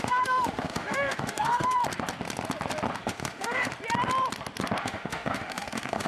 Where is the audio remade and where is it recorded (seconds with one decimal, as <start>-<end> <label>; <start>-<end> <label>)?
0.0-1.8 remade; 1.8-3.0 recorded; 3.0-3.7 remade; 3.7-4.8 recorded; 4.8-6.1 remade